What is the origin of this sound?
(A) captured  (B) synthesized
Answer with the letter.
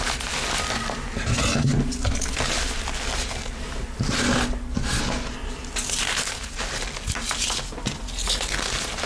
A